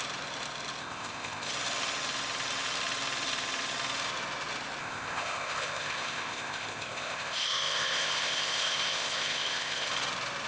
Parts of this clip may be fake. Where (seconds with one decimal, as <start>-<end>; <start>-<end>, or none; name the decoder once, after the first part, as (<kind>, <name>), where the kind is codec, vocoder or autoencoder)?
0.8-1.5 (codec, ZipCodec); 4.8-9.9